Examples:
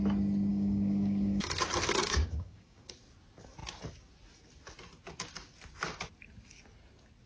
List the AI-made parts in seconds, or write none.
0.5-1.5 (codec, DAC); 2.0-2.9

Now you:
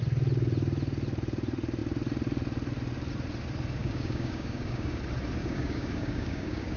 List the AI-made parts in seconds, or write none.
3.8-5.0 (codec, DAC); 5.4-6.8

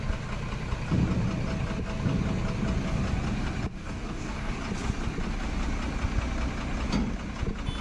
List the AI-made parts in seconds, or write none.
3.8-4.5 (codec, DAC)

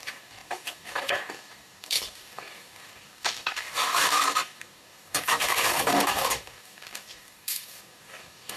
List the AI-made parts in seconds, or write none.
0.0-8.6 (codec, DAC)

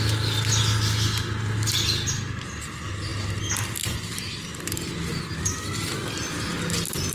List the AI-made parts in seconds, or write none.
none

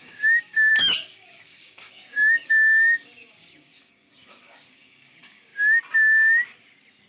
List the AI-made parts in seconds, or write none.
0.0-5.5 (codec, DAC)

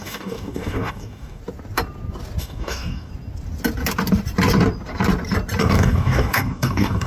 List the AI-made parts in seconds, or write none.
0.0-1.4 (codec, DAC); 2.4-3.1; 5.6-7.1